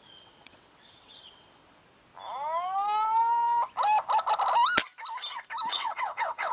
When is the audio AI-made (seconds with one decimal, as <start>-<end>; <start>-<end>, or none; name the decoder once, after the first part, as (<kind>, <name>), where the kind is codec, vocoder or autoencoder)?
0.0-1.8 (vocoder, WaveNeXt); 5.7-6.5